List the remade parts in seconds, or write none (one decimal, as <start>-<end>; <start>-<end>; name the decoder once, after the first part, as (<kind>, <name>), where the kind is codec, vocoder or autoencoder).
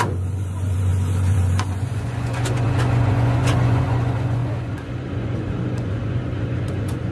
0.0-7.1 (vocoder, Vocos)